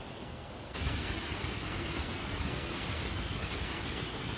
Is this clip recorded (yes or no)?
no